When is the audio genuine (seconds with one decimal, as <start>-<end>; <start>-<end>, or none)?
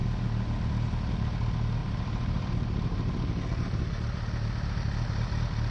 0.0-1.8; 4.2-5.7